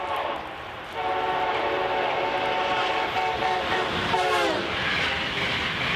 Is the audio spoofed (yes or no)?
no